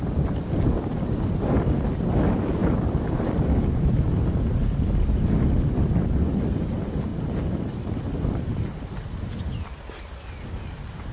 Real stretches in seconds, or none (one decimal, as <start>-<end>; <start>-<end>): 0.0-2.6; 3.5-7.1; 7.7-11.1